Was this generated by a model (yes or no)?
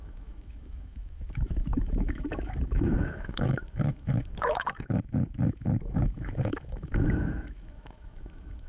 yes